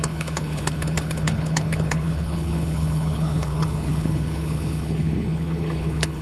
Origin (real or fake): fake